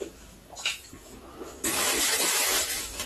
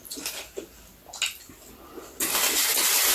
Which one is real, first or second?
second